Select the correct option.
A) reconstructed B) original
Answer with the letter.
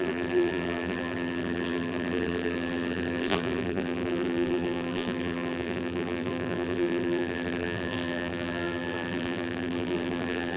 A